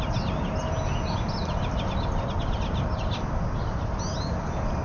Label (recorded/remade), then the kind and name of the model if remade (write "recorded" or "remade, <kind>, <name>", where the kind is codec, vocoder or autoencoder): recorded